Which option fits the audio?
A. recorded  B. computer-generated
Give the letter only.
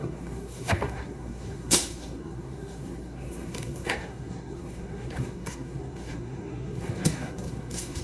B